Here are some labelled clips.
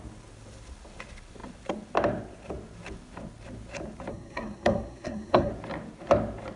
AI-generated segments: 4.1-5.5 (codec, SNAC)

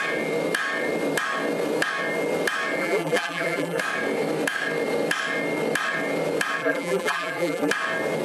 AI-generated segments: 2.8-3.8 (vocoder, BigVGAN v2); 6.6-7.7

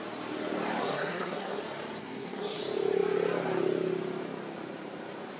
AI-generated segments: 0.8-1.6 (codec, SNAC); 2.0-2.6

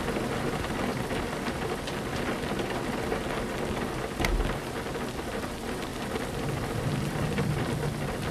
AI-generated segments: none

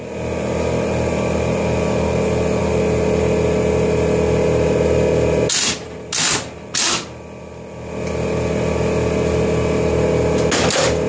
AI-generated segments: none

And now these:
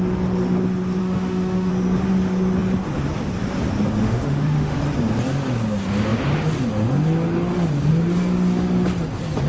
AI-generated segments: 1.0-1.7 (autoencoder, DAC-VAE); 4.0-4.8